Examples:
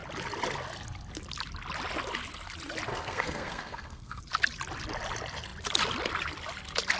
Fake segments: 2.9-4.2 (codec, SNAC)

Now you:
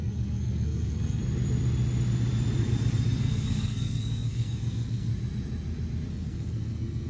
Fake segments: 0.0-1.2 (codec, SNAC); 3.2-5.1; 6.1-7.1

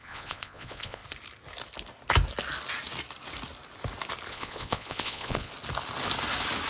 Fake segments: 0.0-1.0 (vocoder, Vocos); 4.3-5.5

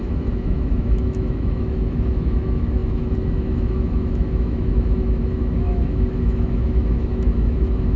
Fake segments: 0.0-8.0 (autoencoder, DAC-VAE)

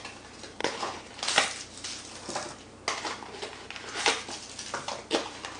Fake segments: 0.6-1.1 (codec, HILCodec)